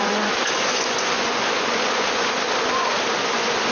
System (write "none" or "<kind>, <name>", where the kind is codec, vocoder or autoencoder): vocoder, Vocos